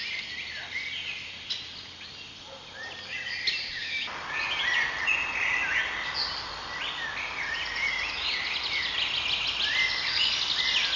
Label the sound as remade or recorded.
recorded